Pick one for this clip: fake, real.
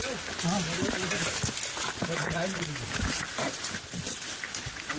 real